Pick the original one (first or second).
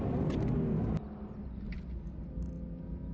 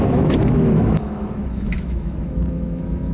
first